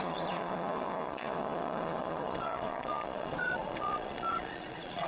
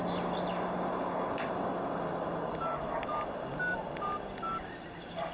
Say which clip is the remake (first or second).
first